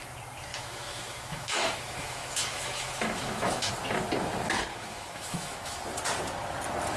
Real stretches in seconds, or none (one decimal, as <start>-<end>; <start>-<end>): 0.0-0.5; 3.7-4.7; 5.8-7.0